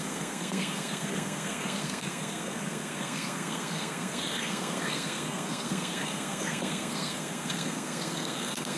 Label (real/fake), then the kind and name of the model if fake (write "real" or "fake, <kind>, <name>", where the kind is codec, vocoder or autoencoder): fake, codec, SNAC